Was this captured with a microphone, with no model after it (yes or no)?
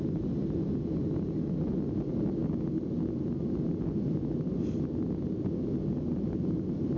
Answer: yes